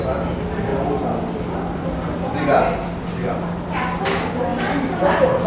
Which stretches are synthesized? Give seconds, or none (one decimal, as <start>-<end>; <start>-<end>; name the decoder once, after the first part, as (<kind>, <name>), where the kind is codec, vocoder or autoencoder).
none